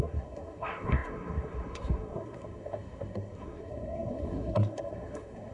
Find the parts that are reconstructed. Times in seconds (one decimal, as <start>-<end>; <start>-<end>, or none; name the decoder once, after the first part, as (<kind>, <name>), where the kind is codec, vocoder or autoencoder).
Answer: 0.0-5.5 (codec, SNAC)